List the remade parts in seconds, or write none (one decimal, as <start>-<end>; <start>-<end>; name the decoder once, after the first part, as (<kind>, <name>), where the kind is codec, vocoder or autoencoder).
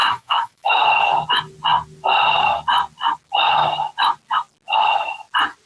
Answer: 0.0-0.8 (autoencoder, DAC-VAE)